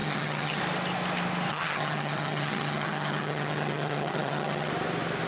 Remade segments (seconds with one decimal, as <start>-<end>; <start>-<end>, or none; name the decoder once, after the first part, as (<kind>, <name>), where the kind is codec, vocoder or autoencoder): 0.0-0.6 (vocoder, HiFi-GAN); 1.5-4.7